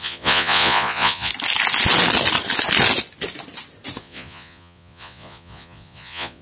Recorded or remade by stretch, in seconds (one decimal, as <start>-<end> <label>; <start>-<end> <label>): 0.0-1.3 remade; 1.3-4.0 recorded; 4.0-6.4 remade

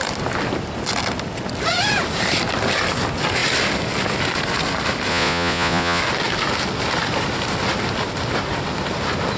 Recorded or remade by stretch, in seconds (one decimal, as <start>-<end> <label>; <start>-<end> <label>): 0.0-5.1 recorded; 5.1-6.0 remade; 6.0-9.4 recorded